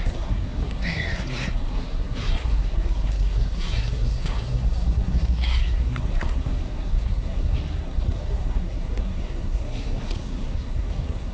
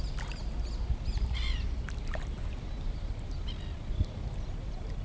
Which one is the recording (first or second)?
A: second